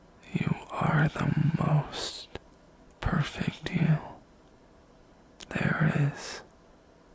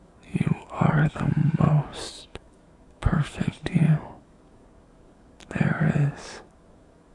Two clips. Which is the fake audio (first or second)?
second